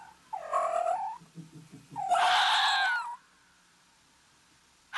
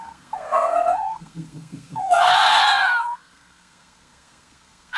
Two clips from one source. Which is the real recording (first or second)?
first